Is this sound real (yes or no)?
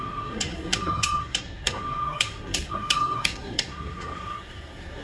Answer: no